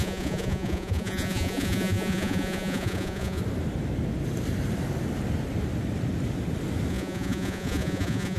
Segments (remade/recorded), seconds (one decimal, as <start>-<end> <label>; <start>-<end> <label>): 0.0-3.4 remade; 3.4-6.9 recorded; 6.9-8.4 remade